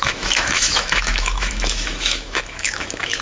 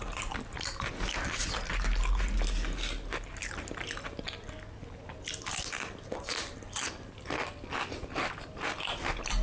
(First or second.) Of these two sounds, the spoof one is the first